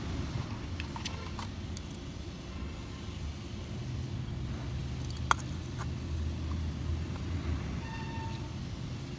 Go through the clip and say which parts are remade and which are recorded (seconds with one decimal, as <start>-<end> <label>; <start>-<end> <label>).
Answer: 0.0-9.2 recorded